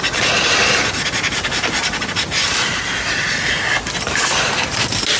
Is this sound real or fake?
real